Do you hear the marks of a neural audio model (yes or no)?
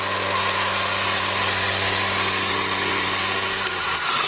no